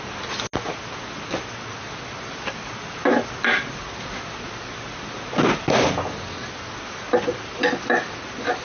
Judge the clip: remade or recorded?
recorded